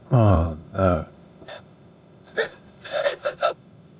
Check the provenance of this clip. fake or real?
fake